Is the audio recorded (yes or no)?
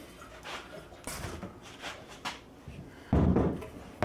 yes